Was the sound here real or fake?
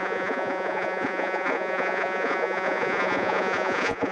fake